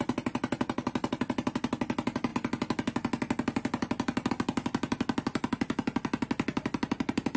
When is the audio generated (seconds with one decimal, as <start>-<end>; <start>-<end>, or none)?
none